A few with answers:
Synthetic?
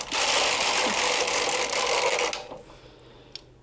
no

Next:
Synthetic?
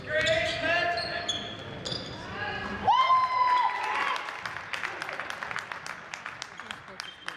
no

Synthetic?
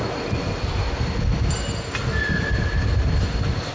no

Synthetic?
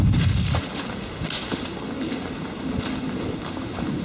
no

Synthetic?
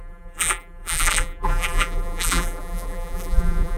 yes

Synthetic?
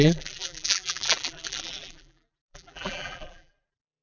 yes